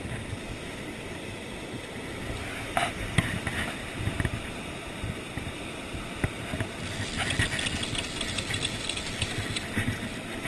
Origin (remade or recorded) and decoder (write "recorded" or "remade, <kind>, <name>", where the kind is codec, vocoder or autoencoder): recorded